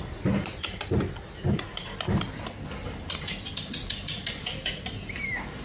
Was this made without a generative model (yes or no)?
yes